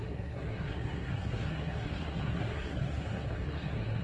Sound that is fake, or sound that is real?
fake